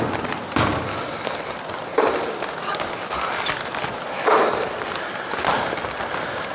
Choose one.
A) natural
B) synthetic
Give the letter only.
A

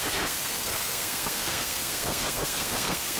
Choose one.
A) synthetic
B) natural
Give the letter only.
A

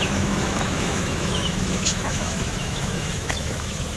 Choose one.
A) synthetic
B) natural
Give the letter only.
A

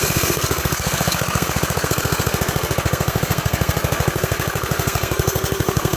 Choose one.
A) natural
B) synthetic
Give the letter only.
B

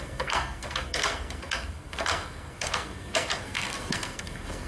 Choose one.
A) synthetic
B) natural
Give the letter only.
A